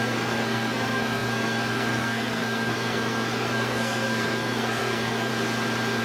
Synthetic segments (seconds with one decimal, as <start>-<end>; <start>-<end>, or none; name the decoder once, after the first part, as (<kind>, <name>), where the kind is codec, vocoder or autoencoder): 0.0-5.3 (codec, SNAC)